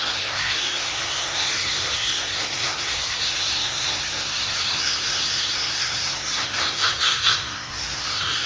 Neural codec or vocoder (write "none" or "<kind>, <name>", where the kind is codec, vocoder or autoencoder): codec, SNAC